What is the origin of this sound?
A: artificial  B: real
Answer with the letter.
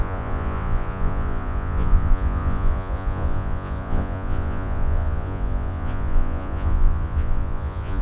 A